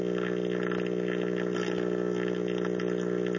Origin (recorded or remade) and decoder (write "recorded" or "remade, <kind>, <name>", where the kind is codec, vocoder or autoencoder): recorded